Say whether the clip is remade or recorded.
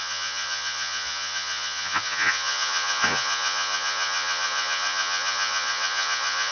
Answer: remade